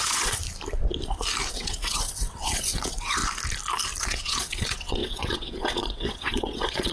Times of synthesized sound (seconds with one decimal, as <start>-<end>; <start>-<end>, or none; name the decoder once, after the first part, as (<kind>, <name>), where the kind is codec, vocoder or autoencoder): 0.0-0.4 (vocoder, WaveNeXt); 1.5-3.2; 4.0-6.9